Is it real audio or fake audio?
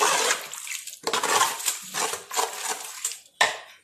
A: real